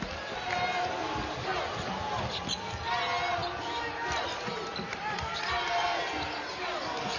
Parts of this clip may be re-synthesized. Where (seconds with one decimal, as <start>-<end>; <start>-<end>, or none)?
none